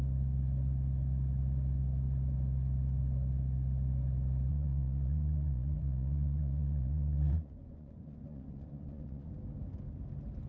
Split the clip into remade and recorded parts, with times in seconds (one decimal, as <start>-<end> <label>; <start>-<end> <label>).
0.0-4.5 recorded; 4.5-9.3 remade; 9.3-10.5 recorded